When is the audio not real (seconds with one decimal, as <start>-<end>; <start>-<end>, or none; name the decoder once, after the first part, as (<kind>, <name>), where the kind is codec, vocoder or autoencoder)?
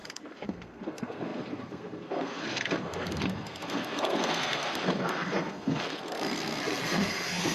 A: 0.0-7.5 (codec, SNAC)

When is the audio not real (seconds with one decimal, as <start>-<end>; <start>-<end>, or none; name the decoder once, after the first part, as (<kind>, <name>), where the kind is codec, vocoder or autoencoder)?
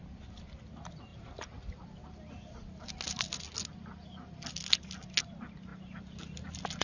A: none